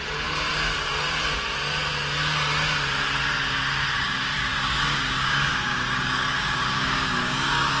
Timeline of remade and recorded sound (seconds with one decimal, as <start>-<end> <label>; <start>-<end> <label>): 0.0-4.0 recorded; 4.0-7.8 remade